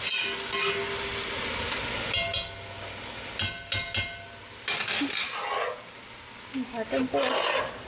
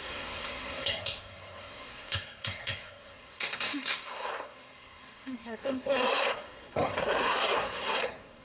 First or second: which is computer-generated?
second